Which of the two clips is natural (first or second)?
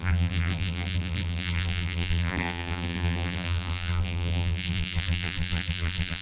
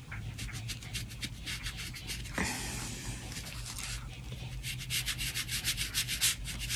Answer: second